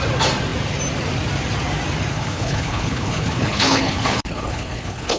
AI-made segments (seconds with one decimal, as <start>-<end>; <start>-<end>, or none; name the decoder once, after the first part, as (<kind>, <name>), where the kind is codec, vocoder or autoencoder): 2.1-5.2 (codec, HILCodec)